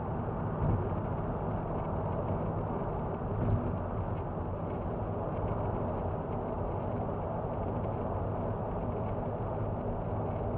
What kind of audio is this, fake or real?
real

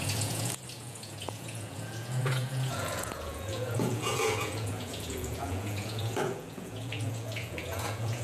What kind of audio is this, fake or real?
fake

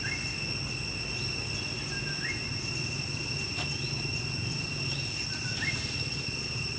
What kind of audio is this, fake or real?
real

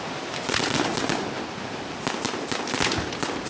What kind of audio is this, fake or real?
real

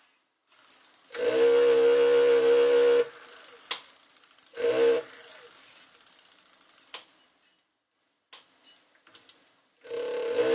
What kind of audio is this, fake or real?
real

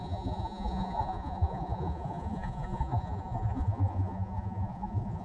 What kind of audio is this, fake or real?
fake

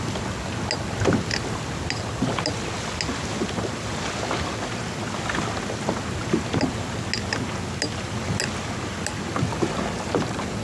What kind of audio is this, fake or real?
real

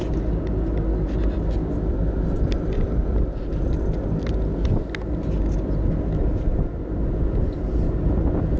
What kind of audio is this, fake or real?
real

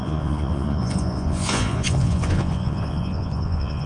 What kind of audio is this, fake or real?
fake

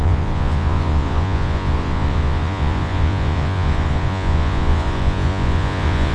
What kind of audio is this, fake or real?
fake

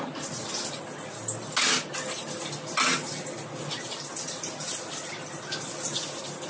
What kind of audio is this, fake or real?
real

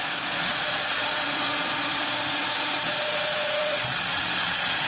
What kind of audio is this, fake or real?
fake